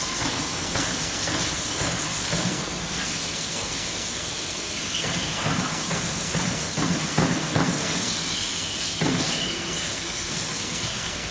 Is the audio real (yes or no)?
no